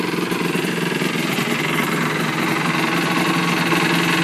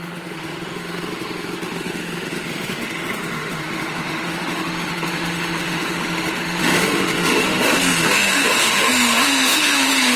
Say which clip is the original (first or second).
first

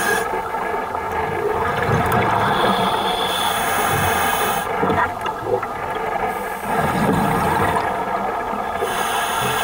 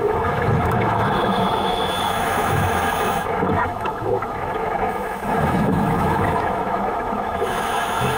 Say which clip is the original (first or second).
first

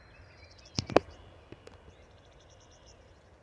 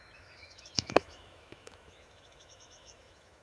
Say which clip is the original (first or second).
first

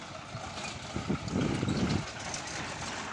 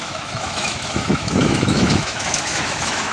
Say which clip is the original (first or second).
first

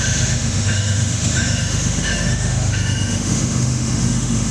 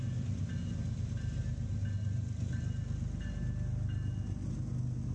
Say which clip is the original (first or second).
second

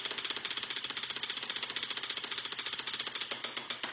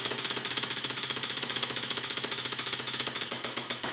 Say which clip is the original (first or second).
first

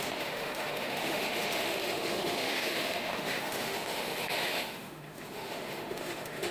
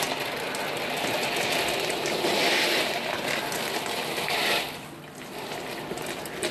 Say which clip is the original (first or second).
second